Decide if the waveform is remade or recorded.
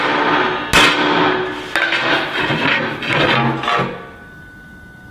recorded